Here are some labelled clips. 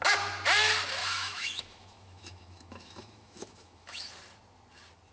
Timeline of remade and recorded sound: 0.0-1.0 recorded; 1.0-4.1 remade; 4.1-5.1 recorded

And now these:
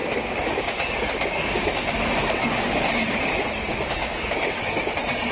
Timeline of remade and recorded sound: 0.0-3.2 remade; 3.2-3.7 recorded; 3.7-4.8 remade; 4.8-5.3 recorded

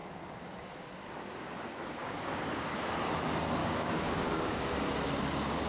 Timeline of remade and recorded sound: 0.0-2.0 recorded; 2.0-2.6 remade; 2.6-3.6 recorded; 3.6-4.6 remade; 4.6-5.7 recorded

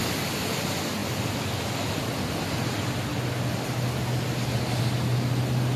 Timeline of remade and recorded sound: 0.0-5.8 recorded

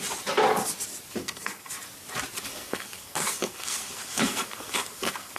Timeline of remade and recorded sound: 0.0-1.2 recorded; 1.2-1.7 remade; 1.7-2.5 recorded; 2.5-5.4 remade